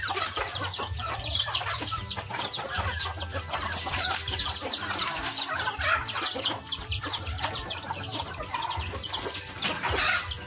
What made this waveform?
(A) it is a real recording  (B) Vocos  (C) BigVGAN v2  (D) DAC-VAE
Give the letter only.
C